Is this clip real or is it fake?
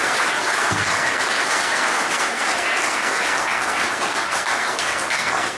fake